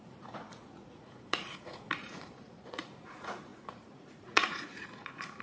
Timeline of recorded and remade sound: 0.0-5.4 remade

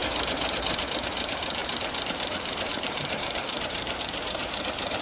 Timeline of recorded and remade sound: 0.0-0.9 remade; 0.9-1.6 recorded; 1.6-4.6 remade; 4.6-5.0 recorded

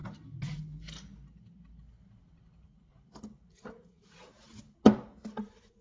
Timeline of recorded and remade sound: 0.0-3.5 recorded; 3.5-4.3 remade; 4.3-5.3 recorded; 5.3-5.8 remade

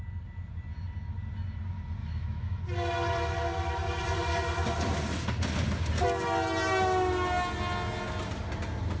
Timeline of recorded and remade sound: 0.0-2.0 recorded; 2.0-2.6 remade; 2.6-9.0 recorded

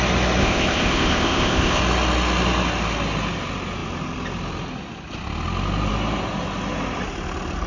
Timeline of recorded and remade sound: 0.0-0.4 recorded; 0.4-1.8 remade; 1.8-7.7 recorded